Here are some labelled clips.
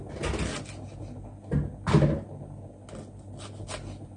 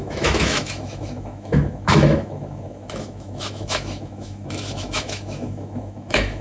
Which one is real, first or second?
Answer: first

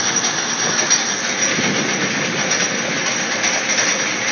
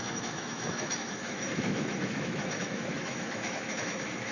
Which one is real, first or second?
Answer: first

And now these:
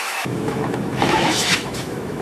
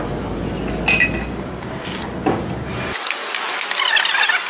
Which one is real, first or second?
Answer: second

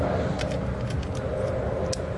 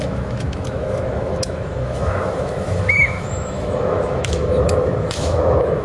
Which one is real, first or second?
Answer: first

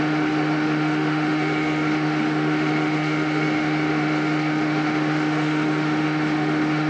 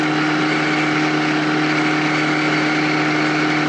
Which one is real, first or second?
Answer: second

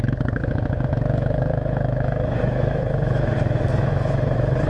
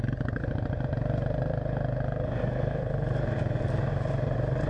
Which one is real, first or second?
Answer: second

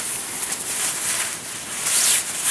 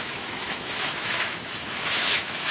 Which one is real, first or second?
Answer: first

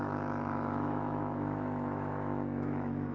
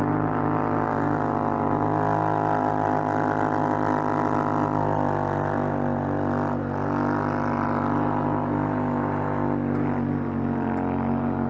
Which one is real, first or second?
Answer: second